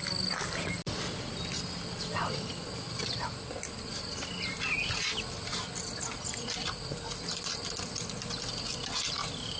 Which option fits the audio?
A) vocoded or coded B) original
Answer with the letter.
B